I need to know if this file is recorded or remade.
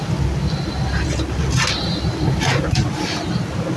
recorded